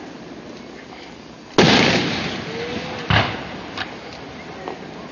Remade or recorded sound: recorded